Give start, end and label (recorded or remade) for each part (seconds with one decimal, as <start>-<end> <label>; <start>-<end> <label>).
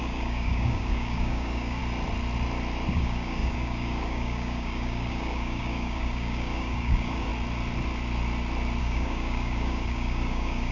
0.0-1.8 remade; 1.8-2.9 recorded; 2.9-7.3 remade; 7.3-8.8 recorded; 8.8-10.7 remade